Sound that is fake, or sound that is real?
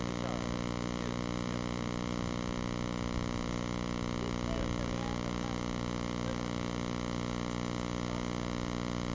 real